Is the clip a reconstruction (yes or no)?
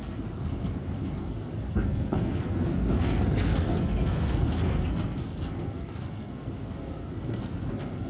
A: yes